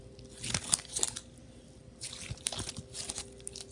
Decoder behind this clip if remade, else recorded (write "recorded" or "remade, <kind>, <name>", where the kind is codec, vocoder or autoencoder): recorded